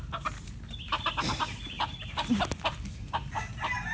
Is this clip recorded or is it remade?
recorded